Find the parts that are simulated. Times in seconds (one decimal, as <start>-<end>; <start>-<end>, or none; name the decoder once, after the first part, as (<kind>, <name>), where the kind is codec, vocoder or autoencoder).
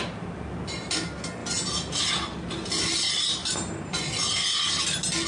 1.4-2.1 (vocoder, BigVGAN v2); 3.4-4.1